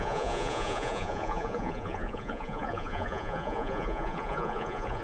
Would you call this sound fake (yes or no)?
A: yes